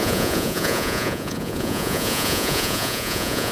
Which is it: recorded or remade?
remade